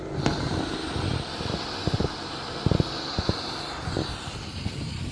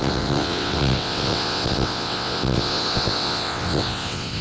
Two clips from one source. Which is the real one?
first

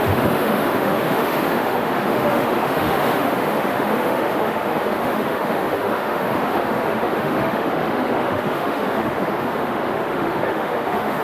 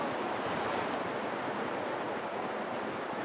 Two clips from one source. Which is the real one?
second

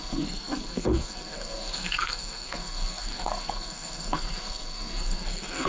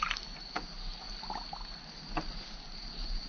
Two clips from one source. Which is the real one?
second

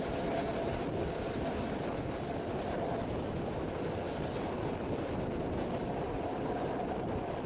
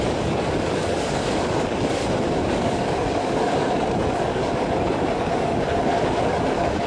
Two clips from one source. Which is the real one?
first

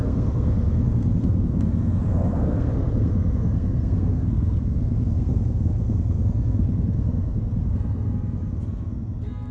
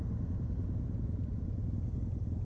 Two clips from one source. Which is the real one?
second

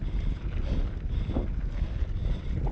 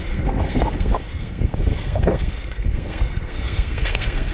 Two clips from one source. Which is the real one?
first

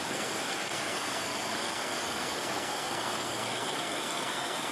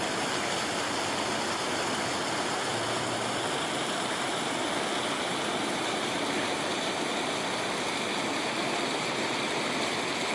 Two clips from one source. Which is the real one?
second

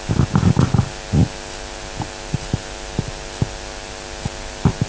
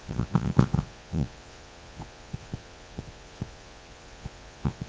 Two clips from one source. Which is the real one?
first